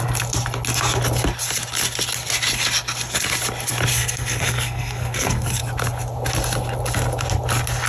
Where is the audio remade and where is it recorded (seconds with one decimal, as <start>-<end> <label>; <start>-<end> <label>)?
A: 0.0-3.9 recorded; 3.9-5.6 remade; 5.6-7.9 recorded